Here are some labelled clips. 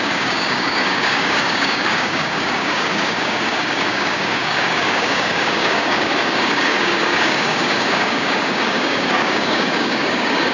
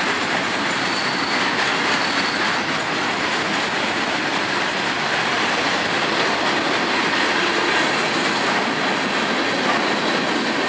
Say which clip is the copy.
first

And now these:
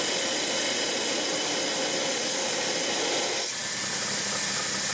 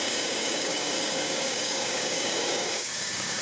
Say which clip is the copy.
second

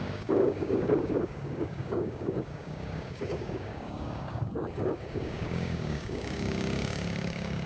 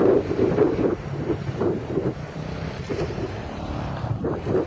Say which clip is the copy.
first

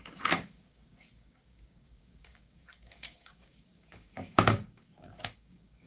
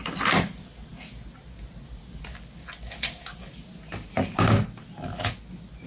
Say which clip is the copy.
first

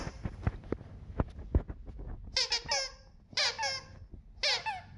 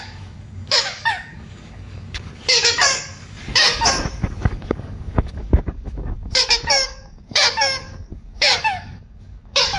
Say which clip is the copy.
second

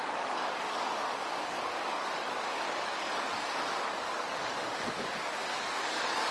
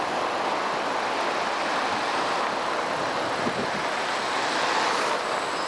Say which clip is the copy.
first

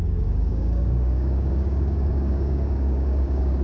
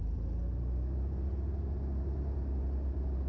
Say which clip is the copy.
first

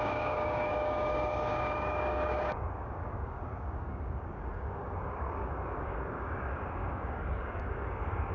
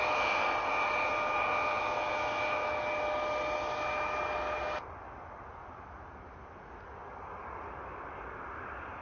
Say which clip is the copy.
first